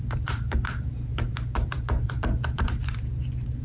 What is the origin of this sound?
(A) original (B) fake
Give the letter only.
B